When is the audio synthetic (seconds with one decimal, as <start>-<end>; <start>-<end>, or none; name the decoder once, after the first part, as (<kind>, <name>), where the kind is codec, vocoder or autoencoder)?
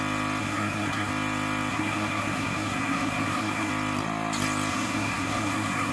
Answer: 0.4-1.1 (codec, SNAC); 1.7-3.7; 4.7-5.9